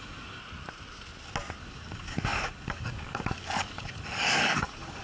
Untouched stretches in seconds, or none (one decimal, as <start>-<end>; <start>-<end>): 0.4-1.6